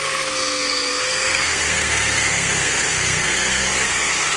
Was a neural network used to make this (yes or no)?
yes